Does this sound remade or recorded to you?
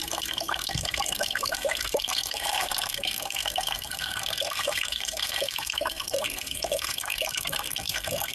remade